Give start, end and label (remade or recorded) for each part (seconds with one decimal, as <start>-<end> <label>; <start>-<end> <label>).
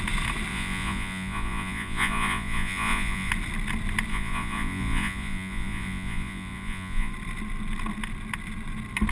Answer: 0.0-0.5 recorded; 0.5-3.3 remade; 3.3-4.1 recorded; 4.1-7.1 remade; 7.1-9.1 recorded